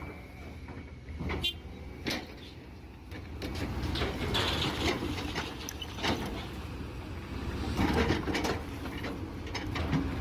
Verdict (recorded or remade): recorded